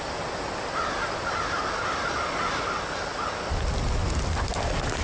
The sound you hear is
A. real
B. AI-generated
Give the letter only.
A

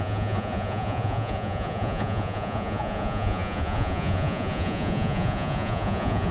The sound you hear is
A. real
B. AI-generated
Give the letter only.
B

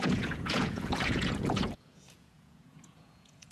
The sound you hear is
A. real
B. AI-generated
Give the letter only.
B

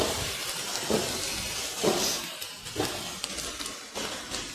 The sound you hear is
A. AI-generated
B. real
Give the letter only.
B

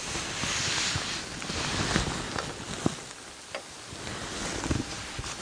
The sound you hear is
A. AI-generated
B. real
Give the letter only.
B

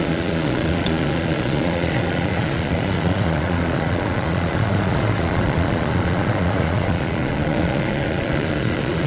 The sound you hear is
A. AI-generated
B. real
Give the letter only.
A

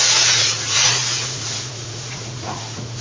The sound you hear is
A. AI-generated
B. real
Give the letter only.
A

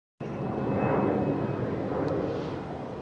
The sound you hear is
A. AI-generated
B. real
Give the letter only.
B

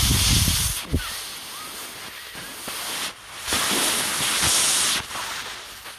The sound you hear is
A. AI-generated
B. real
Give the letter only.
B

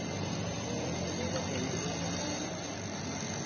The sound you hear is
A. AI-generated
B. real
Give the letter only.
B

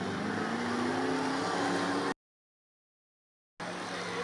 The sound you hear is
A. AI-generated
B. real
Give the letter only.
B